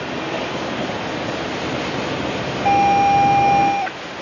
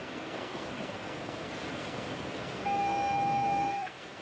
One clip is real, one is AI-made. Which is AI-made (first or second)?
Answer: second